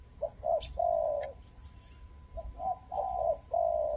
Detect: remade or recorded recorded